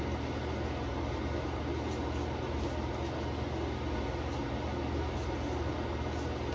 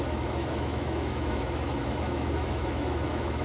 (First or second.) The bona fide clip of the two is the first